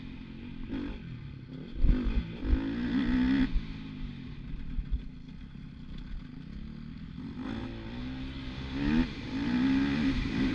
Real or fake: real